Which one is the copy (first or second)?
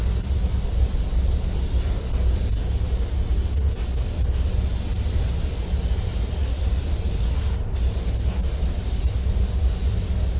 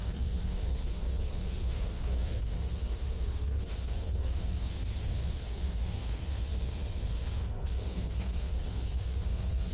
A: second